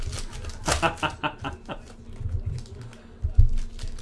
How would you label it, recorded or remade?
recorded